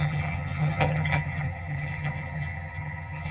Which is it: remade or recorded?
remade